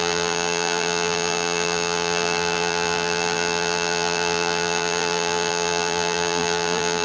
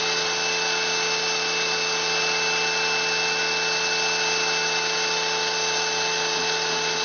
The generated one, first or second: first